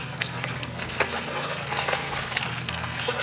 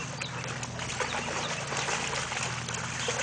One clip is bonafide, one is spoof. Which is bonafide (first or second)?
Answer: second